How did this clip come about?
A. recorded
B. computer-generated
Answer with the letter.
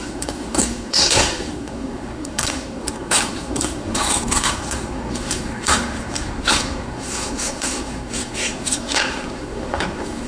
B